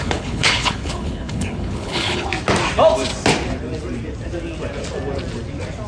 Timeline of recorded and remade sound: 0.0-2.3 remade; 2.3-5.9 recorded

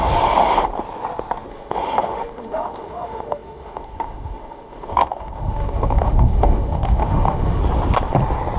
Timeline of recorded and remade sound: 0.0-0.7 remade; 0.7-1.5 recorded; 1.5-7.6 remade; 7.6-8.6 recorded

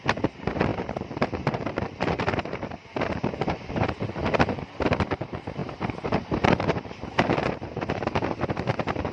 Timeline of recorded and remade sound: 0.0-4.2 remade; 4.2-5.0 recorded; 5.0-9.1 remade